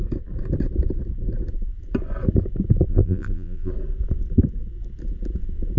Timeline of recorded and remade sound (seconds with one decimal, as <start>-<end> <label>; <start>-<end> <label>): 0.0-2.9 recorded; 2.9-3.7 remade; 3.7-5.8 recorded